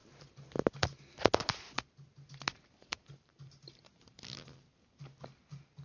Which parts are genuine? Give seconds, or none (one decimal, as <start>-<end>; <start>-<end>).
0.0-2.8; 4.2-5.8